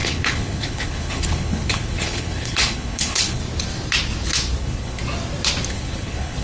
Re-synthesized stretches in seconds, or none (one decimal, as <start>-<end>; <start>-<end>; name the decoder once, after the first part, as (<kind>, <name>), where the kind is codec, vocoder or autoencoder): 0.0-3.4 (codec, HILCodec); 4.6-5.0; 5.7-6.4